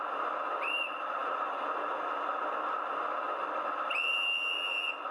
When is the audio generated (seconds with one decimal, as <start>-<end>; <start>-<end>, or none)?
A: none

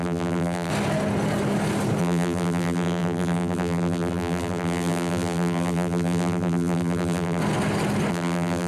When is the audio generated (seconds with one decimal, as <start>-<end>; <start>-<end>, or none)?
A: 0.0-0.7; 2.0-7.4; 8.1-8.7